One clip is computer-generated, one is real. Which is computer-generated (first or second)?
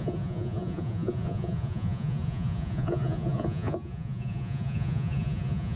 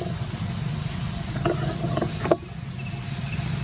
first